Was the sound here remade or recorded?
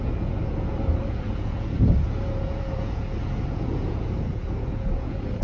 remade